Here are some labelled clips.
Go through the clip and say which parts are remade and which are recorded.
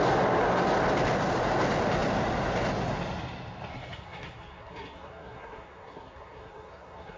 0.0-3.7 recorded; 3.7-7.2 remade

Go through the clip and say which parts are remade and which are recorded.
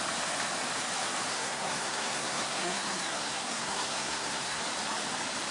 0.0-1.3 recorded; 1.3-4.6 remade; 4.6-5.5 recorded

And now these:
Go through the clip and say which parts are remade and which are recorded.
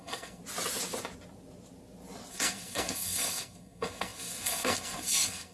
0.0-0.4 remade; 0.4-2.3 recorded; 2.3-5.5 remade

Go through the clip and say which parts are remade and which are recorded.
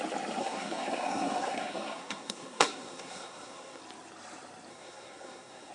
0.0-0.4 recorded; 0.4-3.8 remade; 3.8-4.7 recorded; 4.7-5.7 remade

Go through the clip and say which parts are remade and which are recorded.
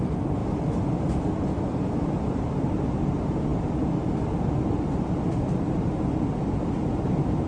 0.0-7.5 recorded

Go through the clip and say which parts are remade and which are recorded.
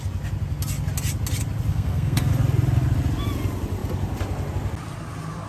0.0-1.7 recorded; 1.7-2.3 remade; 2.3-5.5 recorded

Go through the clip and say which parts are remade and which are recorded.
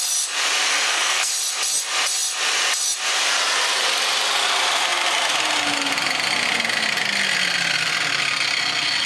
0.0-0.7 recorded; 0.7-1.3 remade; 1.3-9.1 recorded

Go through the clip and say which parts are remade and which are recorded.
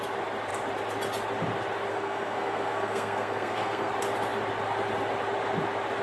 0.0-1.9 recorded; 1.9-3.9 remade; 3.9-6.0 recorded